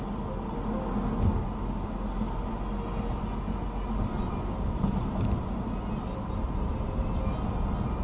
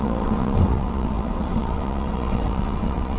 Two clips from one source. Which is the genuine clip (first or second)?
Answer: first